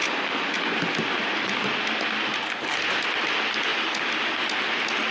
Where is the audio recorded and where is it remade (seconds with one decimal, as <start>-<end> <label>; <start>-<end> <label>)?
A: 0.0-0.5 remade; 0.5-1.2 recorded; 1.2-1.7 remade; 1.7-5.1 recorded